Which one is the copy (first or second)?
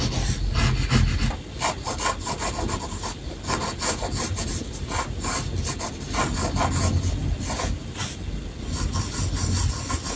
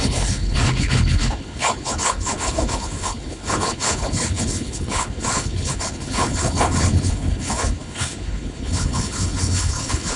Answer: second